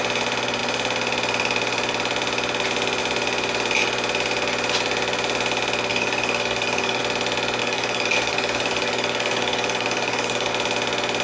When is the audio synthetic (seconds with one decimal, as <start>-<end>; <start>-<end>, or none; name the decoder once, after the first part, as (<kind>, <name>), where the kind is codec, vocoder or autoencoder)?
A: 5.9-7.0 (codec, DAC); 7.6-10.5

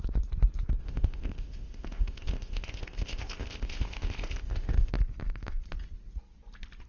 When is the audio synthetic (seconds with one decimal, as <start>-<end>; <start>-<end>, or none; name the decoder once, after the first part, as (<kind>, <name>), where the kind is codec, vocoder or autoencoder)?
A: 0.8-4.9 (codec, ZipCodec)

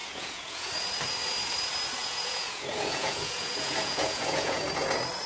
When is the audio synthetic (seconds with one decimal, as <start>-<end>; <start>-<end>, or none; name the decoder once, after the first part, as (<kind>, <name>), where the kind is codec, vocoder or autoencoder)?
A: 0.0-0.7 (vocoder, Vocos); 2.0-4.6